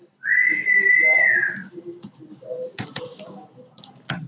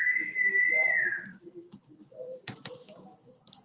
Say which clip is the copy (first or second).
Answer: second